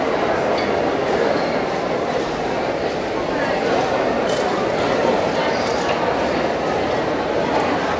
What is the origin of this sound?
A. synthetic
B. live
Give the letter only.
B